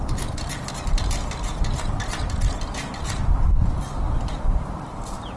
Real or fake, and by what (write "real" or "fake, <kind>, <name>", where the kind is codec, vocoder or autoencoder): real